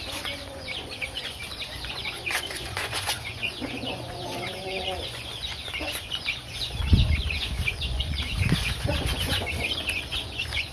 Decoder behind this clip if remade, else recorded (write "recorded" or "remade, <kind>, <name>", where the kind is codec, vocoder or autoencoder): remade, vocoder, Vocos